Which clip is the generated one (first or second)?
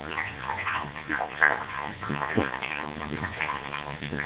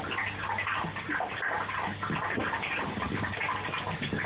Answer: first